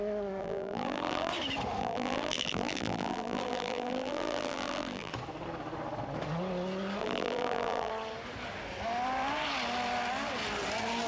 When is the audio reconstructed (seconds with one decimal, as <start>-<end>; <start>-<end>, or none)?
0.4-1.3; 1.8-5.1; 7.0-7.9